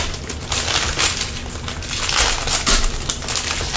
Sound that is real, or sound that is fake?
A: real